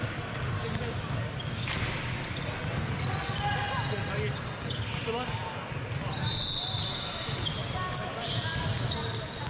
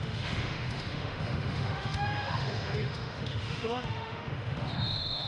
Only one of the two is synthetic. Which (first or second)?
second